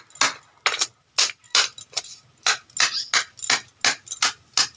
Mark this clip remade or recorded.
recorded